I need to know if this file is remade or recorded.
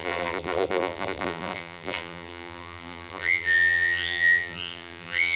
remade